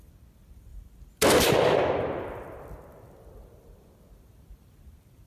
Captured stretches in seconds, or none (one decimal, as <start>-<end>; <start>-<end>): 0.0-5.3